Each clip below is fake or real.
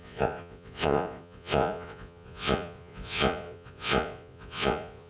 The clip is fake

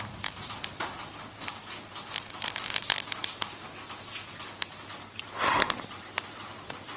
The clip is real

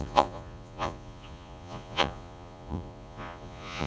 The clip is fake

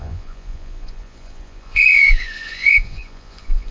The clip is fake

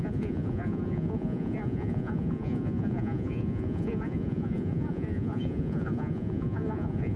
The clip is fake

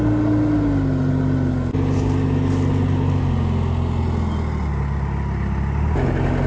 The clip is real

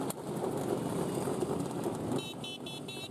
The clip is real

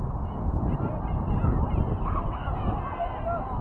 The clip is real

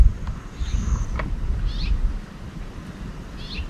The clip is real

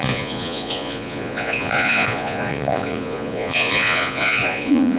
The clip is fake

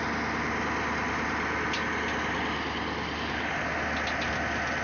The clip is real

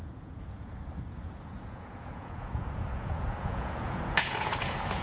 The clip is fake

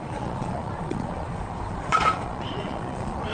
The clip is fake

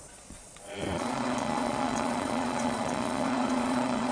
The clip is fake